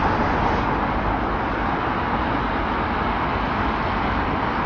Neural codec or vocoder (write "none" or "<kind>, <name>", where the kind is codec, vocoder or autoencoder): none